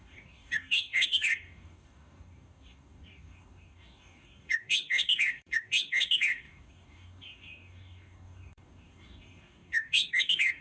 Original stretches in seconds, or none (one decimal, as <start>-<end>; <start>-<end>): none